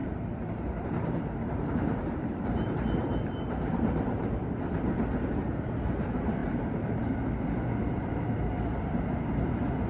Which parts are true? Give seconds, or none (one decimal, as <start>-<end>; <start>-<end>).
4.5-6.4; 7.0-9.9